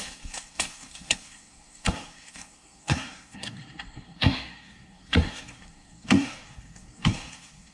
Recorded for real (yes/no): no